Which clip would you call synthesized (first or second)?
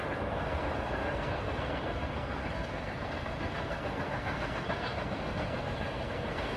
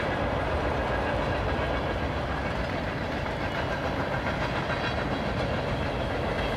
first